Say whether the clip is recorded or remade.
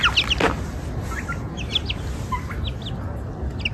recorded